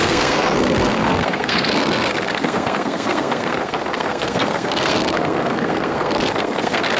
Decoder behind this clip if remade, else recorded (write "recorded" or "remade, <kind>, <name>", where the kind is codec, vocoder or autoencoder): remade, codec, SNAC